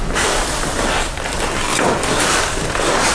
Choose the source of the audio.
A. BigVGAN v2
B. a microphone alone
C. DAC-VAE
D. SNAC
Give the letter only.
B